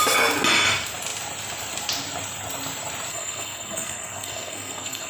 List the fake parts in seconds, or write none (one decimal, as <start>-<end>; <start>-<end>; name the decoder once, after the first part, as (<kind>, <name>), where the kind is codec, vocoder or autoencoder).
3.1-5.1 (codec, SNAC)